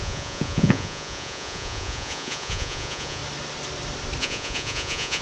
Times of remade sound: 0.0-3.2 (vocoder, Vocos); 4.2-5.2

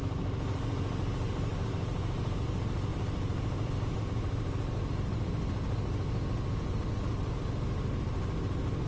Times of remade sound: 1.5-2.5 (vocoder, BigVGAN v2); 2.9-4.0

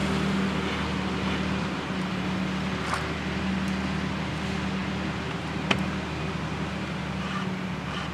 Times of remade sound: none

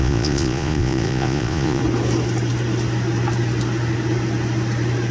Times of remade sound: 0.0-1.8 (vocoder, Vocos)

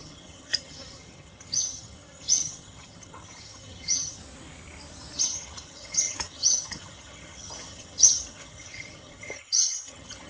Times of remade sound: 0.0-4.2 (vocoder, HiFi-GAN); 5.2-10.3